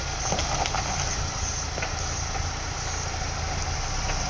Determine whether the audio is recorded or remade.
recorded